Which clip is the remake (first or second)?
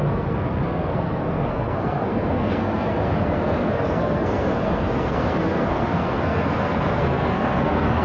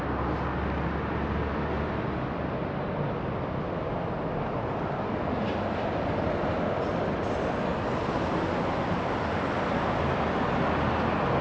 first